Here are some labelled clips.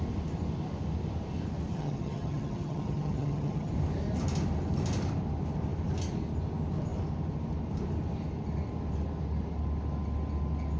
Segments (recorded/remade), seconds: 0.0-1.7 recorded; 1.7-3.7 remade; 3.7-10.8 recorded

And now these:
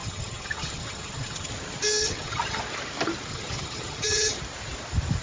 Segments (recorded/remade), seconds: 0.0-1.5 remade; 1.5-2.0 recorded; 2.0-2.6 remade; 2.6-3.3 recorded; 3.3-4.4 remade; 4.4-5.2 recorded

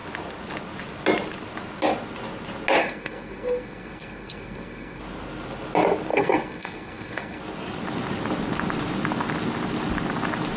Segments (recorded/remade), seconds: 0.0-2.8 recorded; 2.8-5.0 remade; 5.0-6.1 recorded; 6.1-7.4 remade; 7.4-10.6 recorded